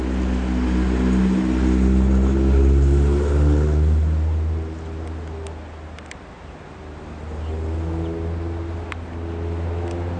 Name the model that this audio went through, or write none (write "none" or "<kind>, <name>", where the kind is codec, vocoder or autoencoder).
none